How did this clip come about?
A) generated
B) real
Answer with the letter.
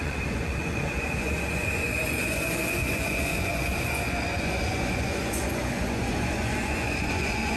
A